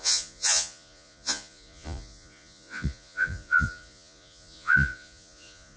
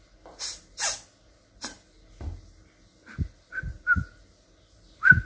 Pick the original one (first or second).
second